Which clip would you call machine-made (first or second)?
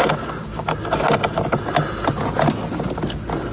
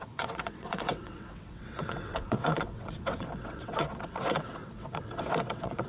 second